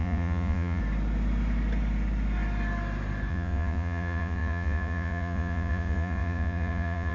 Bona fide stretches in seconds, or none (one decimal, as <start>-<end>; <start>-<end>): 0.8-3.3